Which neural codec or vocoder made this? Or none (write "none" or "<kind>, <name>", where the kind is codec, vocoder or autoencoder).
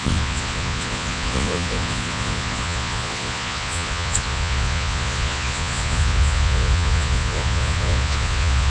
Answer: vocoder, Vocos